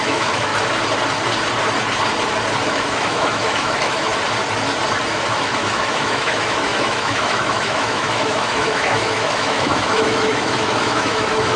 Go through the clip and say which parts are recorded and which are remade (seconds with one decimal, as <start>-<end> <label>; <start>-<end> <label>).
0.0-0.5 remade; 0.5-2.7 recorded; 2.7-4.1 remade; 4.1-5.1 recorded; 5.1-11.6 remade